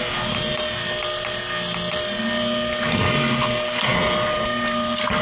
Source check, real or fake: real